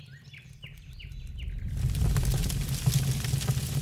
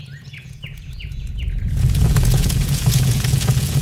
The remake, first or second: second